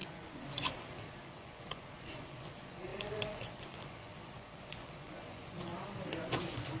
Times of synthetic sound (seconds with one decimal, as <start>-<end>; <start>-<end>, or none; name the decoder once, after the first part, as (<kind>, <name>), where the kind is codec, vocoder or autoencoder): 0.0-5.7 (vocoder, Vocos); 6.2-6.8